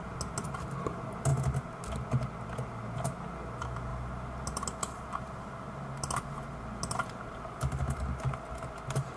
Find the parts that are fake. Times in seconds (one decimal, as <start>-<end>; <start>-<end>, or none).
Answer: none